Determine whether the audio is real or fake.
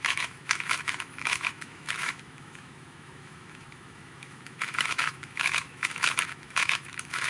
fake